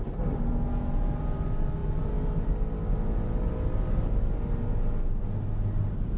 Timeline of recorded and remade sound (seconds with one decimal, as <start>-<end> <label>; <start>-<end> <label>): 0.0-6.2 recorded